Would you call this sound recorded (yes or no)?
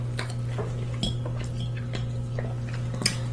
yes